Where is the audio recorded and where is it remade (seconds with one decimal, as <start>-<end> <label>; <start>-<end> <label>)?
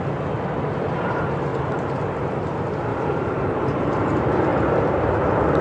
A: 0.0-1.5 recorded; 1.5-2.1 remade; 2.1-2.9 recorded; 2.9-4.1 remade; 4.1-5.6 recorded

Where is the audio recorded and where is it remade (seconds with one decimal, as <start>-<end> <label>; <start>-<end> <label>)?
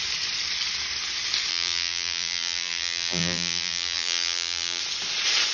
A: 0.0-1.5 recorded; 1.5-4.8 remade; 4.8-5.5 recorded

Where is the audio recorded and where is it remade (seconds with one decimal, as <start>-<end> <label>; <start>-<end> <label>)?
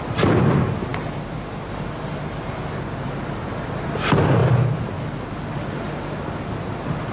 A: 0.0-7.1 recorded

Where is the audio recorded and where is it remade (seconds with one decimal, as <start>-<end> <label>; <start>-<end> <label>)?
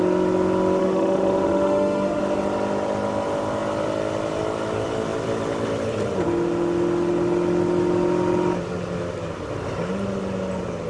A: 0.0-0.8 recorded; 0.8-2.2 remade; 2.2-10.9 recorded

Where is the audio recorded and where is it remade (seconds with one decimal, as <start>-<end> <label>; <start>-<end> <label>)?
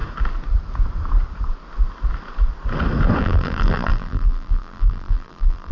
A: 0.0-3.2 recorded; 3.2-5.7 remade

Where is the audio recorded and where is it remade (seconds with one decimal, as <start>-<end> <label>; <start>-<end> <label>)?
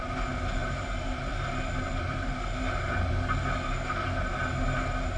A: 0.0-0.6 recorded; 0.6-3.1 remade; 3.1-5.2 recorded